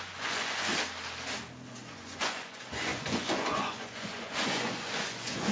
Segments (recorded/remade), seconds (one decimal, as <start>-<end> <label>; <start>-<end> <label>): 0.0-0.7 remade; 0.7-1.7 recorded; 1.7-5.5 remade